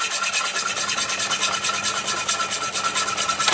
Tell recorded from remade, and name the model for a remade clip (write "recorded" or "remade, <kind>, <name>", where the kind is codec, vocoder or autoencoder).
recorded